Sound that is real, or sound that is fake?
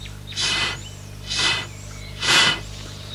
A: fake